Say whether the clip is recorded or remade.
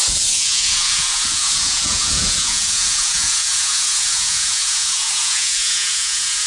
remade